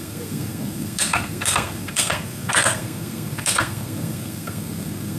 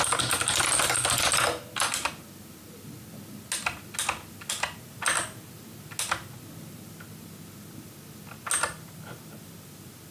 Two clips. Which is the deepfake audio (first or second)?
first